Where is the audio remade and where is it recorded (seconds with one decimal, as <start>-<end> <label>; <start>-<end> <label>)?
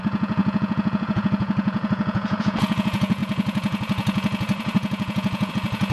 0.0-5.9 remade